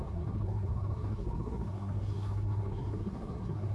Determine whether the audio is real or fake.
fake